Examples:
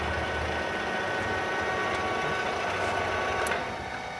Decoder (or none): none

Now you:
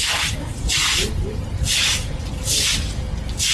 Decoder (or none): none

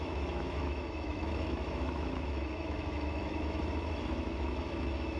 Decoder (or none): autoencoder, DAC-VAE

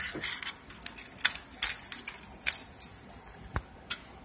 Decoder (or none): none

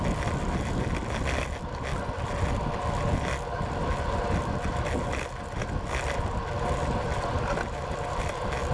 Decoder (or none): none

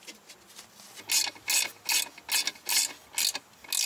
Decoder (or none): none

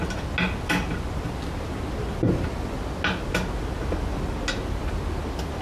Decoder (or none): none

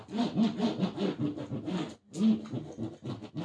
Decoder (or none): none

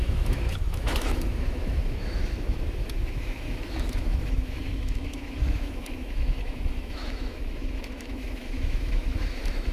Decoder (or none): autoencoder, DAC-VAE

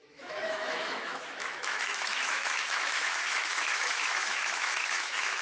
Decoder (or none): autoencoder, DAC-VAE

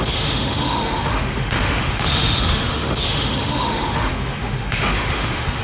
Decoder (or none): autoencoder, DAC-VAE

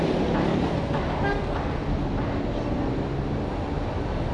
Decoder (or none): none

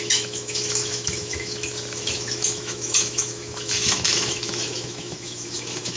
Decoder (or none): autoencoder, DAC-VAE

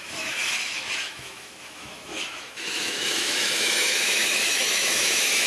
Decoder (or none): autoencoder, DAC-VAE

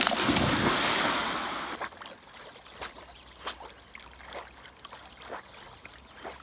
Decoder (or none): none